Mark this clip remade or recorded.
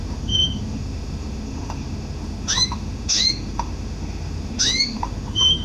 remade